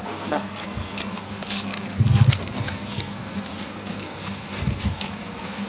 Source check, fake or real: fake